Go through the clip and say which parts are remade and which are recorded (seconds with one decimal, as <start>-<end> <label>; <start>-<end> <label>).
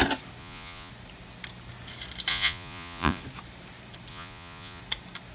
0.0-0.4 recorded; 0.4-0.9 remade; 0.9-2.3 recorded; 2.3-3.2 remade; 3.2-4.1 recorded; 4.1-4.8 remade; 4.8-5.3 recorded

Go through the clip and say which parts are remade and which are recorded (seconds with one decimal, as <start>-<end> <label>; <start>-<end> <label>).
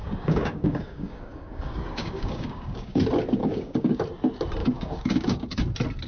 0.0-3.0 remade; 3.0-3.4 recorded; 3.4-4.0 remade; 4.0-4.6 recorded; 4.6-5.6 remade; 5.6-6.1 recorded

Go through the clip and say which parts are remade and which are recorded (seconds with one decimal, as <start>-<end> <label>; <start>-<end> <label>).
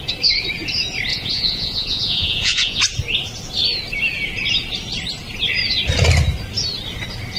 0.0-1.1 recorded; 1.1-2.8 remade; 2.8-7.4 recorded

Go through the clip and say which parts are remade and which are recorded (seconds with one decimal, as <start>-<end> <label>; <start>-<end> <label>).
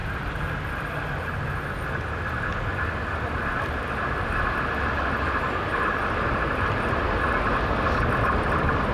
0.0-8.9 recorded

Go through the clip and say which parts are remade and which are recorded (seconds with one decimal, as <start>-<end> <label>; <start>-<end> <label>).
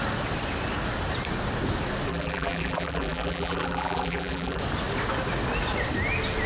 0.0-2.1 recorded; 2.1-4.6 remade; 4.6-6.5 recorded